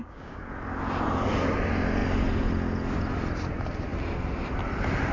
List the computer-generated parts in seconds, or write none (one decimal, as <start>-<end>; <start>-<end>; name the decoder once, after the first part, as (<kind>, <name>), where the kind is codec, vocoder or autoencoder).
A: 0.0-0.5 (codec, DAC)